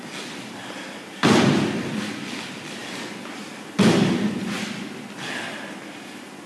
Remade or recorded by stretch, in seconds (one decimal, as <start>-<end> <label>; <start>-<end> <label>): 0.0-6.5 recorded